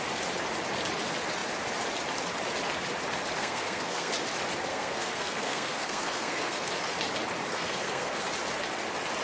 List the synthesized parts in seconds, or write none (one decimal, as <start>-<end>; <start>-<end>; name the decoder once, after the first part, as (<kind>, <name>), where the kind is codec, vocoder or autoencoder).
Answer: 3.4-4.1 (codec, SNAC); 4.7-6.7; 7.5-8.2